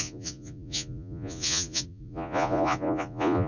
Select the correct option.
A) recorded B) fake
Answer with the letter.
B